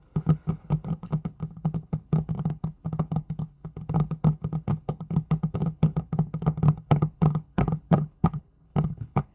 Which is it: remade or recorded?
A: remade